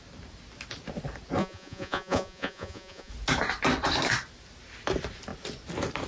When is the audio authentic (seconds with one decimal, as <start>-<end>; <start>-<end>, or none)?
0.0-1.4; 3.1-6.1